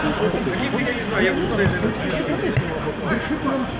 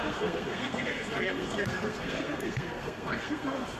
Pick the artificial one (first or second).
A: second